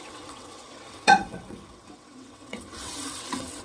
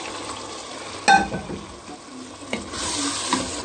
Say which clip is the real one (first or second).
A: second